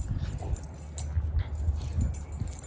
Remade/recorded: recorded